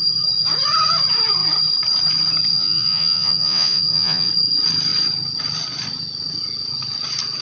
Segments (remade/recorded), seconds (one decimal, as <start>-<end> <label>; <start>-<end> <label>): 0.0-2.5 recorded; 2.5-4.3 remade; 4.3-7.4 recorded